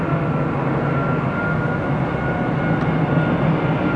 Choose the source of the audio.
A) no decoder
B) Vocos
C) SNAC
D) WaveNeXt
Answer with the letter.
A